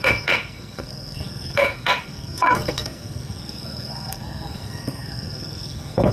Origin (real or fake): fake